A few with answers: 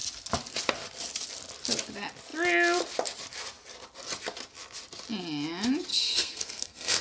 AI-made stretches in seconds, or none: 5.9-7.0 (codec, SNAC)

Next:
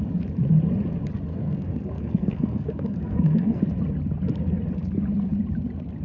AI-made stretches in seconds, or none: 1.3-3.6 (codec, SNAC)

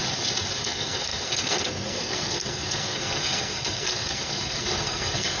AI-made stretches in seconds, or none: 0.6-5.4 (codec, SNAC)

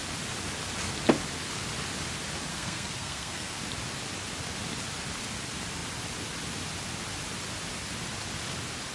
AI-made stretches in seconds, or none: 2.5-3.6 (codec, SNAC)

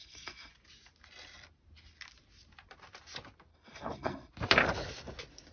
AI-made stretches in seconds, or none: 0.0-0.5 (codec, SNAC); 3.5-4.3

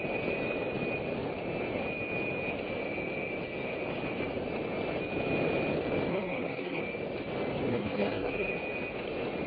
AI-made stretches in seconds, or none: 6.1-6.8 (codec, SNAC); 7.7-8.5

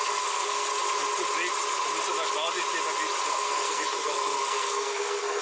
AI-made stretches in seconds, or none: 0.0-0.7 (codec, SNAC); 3.3-5.4

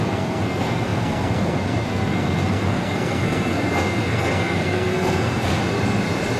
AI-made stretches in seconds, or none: 0.0-5.6 (codec, SNAC)